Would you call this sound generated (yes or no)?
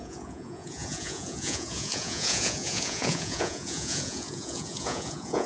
yes